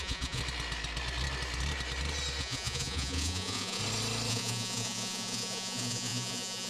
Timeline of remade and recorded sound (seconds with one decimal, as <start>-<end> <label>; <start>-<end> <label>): 0.0-0.4 remade; 0.4-2.4 recorded; 2.4-3.8 remade; 3.8-4.3 recorded; 4.3-6.7 remade